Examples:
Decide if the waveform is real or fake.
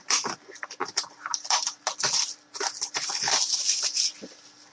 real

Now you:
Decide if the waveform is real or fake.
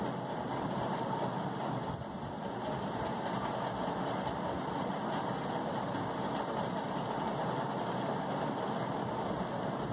fake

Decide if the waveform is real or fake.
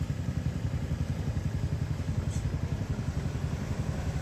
fake